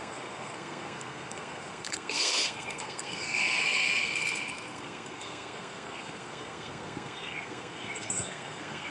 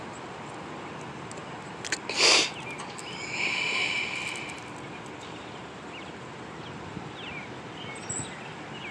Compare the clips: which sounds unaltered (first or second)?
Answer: second